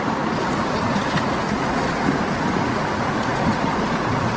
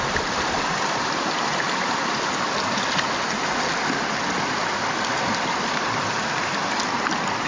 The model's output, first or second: first